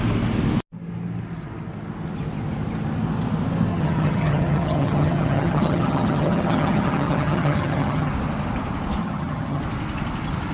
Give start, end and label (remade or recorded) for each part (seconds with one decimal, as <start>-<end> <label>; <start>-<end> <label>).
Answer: 0.0-3.7 recorded; 3.7-8.1 remade; 8.1-9.0 recorded; 9.0-9.6 remade; 9.6-10.5 recorded